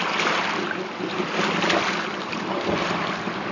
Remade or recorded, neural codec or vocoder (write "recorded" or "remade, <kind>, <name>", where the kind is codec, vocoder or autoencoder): recorded